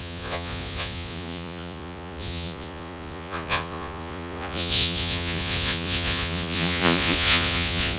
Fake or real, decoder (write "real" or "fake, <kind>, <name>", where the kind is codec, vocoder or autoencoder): fake, vocoder, Vocos